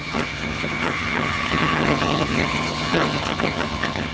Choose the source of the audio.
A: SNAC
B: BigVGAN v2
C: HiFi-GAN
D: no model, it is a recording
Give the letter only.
C